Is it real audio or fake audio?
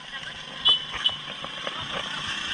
real